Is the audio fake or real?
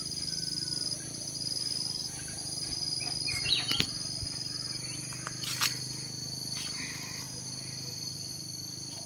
real